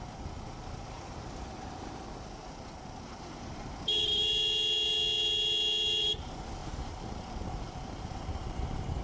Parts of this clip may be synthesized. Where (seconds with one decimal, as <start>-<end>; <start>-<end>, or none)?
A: 6.6-9.0